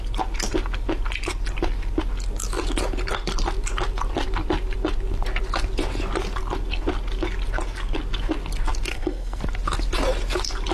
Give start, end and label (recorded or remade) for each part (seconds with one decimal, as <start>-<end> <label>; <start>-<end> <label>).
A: 0.0-8.9 recorded; 8.9-9.4 remade; 9.4-10.7 recorded